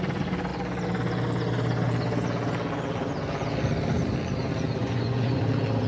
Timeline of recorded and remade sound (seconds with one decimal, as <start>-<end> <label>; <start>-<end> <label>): 0.0-4.8 recorded; 4.8-5.4 remade; 5.4-5.9 recorded